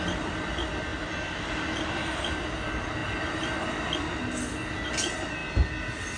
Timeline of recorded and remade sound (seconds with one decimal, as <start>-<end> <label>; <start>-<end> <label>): 0.0-0.9 recorded; 0.9-2.2 remade; 2.2-6.2 recorded